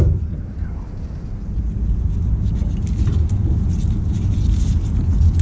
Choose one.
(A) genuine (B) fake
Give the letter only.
A